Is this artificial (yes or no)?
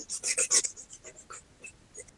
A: no